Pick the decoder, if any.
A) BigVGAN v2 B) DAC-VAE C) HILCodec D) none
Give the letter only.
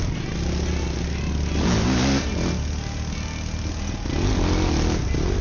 D